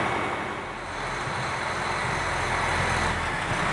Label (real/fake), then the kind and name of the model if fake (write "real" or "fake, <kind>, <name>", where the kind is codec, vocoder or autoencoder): real